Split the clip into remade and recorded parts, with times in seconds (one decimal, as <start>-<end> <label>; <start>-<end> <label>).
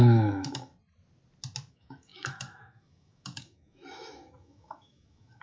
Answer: 0.0-0.7 remade; 0.7-1.7 recorded; 1.7-5.4 remade